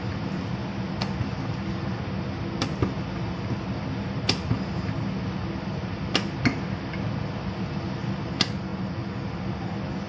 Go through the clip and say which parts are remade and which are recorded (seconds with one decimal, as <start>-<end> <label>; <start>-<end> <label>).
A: 0.0-10.1 recorded